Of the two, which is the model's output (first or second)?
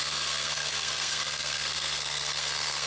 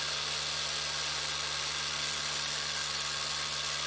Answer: first